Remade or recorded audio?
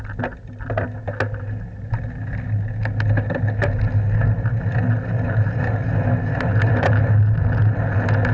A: recorded